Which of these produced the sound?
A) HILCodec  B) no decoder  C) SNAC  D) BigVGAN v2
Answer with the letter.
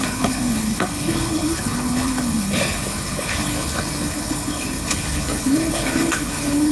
A